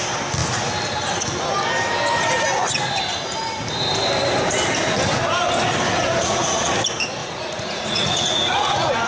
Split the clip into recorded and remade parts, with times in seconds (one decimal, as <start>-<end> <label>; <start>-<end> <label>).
0.0-6.2 recorded; 6.2-6.7 remade; 6.7-7.2 recorded; 7.2-9.1 remade